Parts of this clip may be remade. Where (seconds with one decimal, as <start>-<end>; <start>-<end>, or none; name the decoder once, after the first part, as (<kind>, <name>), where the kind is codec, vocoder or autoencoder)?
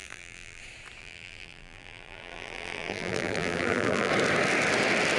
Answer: 0.0-0.6 (vocoder, BigVGAN v2); 1.0-4.1